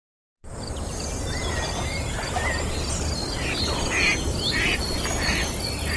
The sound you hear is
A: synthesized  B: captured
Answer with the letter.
B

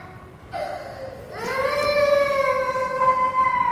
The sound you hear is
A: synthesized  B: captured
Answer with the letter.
B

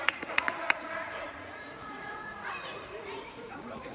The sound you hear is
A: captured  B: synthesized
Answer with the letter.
B